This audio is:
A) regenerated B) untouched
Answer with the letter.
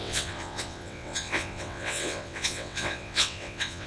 A